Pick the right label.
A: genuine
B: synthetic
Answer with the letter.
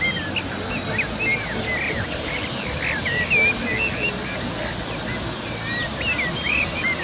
A